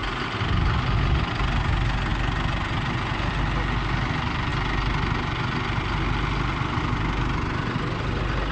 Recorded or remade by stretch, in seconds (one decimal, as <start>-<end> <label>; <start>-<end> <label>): 0.0-8.5 recorded

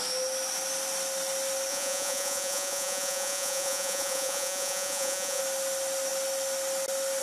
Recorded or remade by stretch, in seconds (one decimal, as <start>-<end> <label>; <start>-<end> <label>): 0.0-1.7 recorded; 1.7-5.4 remade; 5.4-7.2 recorded